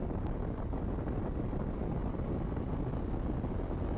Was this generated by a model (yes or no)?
no